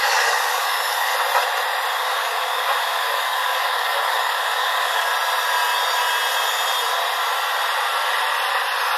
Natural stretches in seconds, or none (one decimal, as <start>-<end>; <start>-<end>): 1.1-1.9; 5.1-9.0